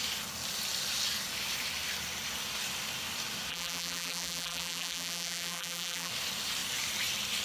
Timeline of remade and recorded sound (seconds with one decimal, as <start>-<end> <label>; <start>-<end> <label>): 0.0-3.5 recorded; 3.5-6.1 remade; 6.1-7.4 recorded